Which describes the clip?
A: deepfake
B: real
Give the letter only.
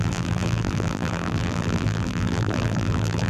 A